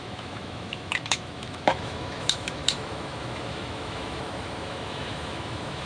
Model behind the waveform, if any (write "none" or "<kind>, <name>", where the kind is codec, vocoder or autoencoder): autoencoder, DAC-VAE